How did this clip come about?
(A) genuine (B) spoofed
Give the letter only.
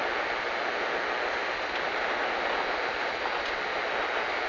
A